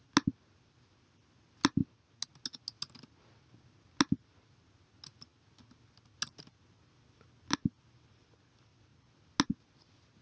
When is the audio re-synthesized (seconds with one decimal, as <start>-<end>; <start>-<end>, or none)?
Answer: none